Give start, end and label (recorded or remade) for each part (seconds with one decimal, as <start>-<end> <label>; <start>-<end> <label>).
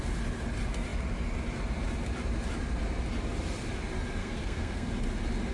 0.0-4.2 recorded; 4.2-4.9 remade; 4.9-5.5 recorded